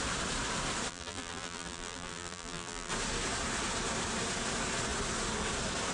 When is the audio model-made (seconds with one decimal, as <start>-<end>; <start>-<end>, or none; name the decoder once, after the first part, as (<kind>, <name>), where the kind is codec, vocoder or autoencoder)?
0.9-2.9 (vocoder, BigVGAN v2)